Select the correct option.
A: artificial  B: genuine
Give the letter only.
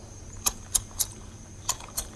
A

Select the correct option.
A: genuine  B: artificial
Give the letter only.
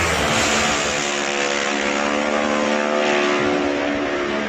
A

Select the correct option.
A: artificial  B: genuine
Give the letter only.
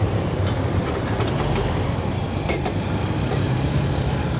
A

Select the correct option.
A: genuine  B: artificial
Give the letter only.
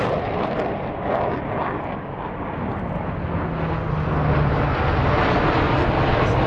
A